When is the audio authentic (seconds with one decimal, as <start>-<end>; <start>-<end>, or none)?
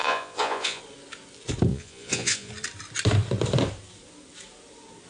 0.8-1.7; 2.5-5.1